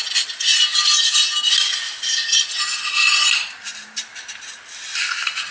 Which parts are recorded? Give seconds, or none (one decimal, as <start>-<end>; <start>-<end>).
0.0-5.5